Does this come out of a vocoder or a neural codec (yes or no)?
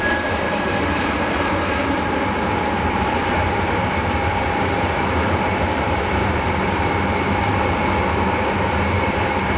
yes